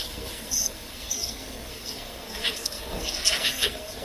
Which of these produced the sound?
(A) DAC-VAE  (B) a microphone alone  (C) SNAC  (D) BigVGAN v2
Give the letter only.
C